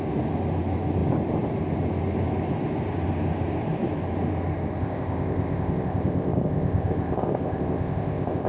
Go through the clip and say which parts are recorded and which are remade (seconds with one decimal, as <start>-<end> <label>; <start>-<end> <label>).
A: 0.0-4.8 recorded; 4.8-8.5 remade